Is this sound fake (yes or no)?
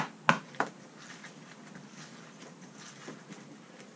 no